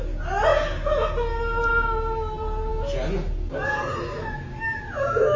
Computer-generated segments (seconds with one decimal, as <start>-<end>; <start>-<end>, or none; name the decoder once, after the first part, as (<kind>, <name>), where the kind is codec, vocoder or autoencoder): none